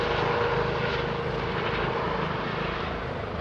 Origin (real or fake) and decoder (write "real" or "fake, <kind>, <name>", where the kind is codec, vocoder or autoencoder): real